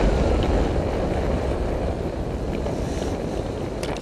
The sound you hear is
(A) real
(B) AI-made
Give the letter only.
A